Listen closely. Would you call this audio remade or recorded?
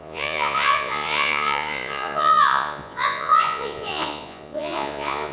remade